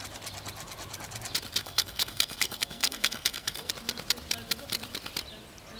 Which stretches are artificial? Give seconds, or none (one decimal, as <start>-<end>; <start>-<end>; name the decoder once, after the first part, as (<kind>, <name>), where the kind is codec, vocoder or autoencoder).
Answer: 1.6-3.7 (codec, SNAC)